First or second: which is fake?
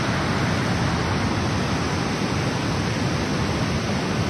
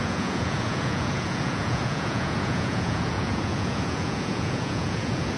second